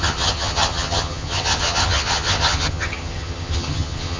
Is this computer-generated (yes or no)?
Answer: yes